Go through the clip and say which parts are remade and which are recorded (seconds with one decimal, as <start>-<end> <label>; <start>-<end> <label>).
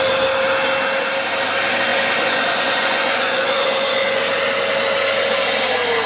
0.0-1.9 recorded; 1.9-4.2 remade; 4.2-6.1 recorded